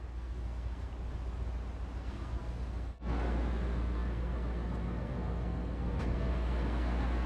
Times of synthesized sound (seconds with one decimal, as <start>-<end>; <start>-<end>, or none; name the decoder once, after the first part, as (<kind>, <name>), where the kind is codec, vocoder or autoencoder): 0.0-0.9 (codec, SNAC); 2.0-7.3